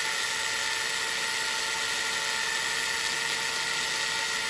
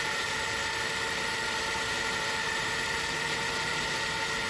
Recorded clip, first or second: first